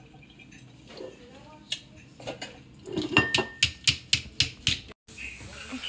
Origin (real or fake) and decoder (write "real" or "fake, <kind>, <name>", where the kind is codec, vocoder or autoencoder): real